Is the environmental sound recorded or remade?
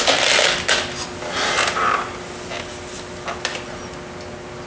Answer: recorded